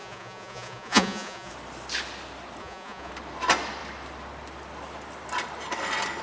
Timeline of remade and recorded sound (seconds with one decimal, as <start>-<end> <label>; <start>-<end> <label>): 0.0-1.5 remade; 1.5-2.6 recorded; 2.6-3.1 remade; 3.1-6.2 recorded